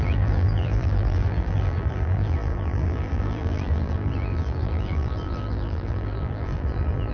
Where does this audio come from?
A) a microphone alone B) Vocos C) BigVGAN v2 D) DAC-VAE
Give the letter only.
C